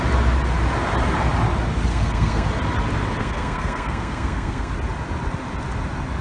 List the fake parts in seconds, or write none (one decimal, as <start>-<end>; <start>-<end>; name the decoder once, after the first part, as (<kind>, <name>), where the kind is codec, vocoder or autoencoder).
1.9-2.5 (codec, SNAC); 3.2-4.7